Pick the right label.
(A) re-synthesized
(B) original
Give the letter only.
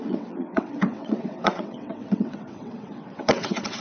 A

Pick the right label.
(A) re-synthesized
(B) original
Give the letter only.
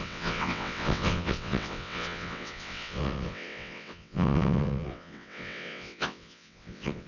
A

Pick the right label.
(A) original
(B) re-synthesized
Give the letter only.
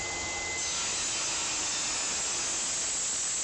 A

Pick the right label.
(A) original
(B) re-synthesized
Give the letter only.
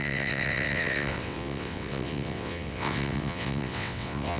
B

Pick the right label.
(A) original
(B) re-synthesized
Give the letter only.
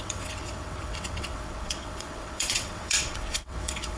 B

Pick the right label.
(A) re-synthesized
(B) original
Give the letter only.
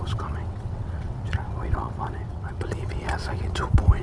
A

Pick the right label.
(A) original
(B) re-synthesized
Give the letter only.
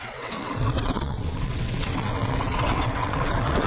B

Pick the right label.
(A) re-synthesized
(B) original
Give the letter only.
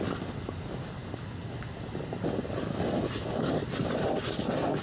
B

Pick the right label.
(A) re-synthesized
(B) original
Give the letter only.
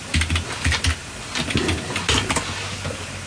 B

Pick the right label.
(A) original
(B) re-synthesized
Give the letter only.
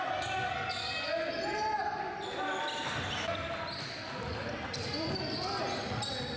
A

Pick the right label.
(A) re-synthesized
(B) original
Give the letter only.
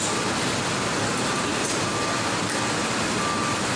B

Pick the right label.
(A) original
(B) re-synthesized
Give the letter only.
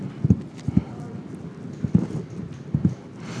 A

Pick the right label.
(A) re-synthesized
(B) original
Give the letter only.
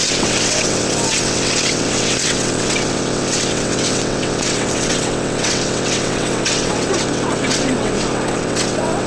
A